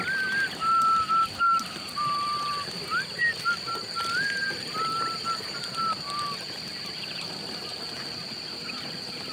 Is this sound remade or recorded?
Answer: recorded